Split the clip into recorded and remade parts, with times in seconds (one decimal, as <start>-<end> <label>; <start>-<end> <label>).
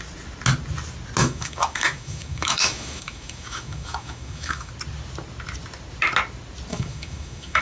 0.0-1.2 recorded; 1.2-4.7 remade; 4.7-6.7 recorded; 6.7-7.6 remade